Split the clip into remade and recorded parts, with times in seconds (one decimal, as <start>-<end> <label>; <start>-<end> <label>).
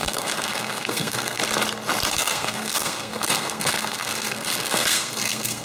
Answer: 0.0-1.4 remade; 1.4-2.1 recorded; 2.1-5.6 remade